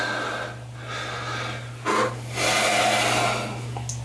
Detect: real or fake real